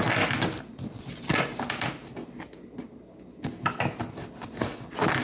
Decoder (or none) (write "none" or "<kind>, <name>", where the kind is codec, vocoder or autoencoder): none